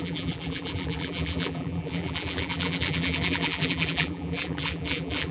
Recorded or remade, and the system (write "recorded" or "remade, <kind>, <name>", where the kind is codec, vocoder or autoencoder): remade, vocoder, BigVGAN v2